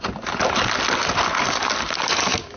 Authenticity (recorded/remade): recorded